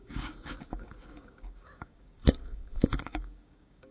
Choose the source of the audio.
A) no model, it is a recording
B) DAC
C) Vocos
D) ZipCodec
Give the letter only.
B